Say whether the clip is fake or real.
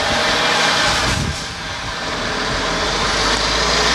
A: real